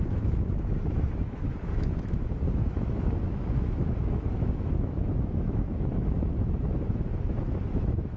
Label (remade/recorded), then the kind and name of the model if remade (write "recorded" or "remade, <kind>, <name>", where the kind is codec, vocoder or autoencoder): remade, autoencoder, DAC-VAE